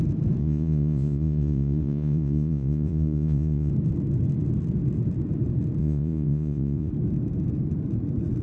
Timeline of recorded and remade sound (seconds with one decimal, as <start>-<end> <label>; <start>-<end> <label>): 0.0-0.4 recorded; 0.4-3.7 remade; 3.7-5.8 recorded; 5.8-6.9 remade; 6.9-8.4 recorded